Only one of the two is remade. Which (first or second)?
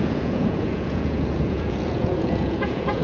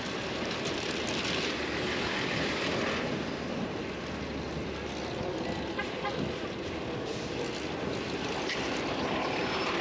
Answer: first